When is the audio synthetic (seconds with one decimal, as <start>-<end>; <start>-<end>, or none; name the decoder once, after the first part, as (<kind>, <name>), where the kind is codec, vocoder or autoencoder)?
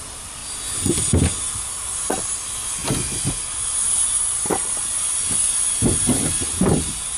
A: none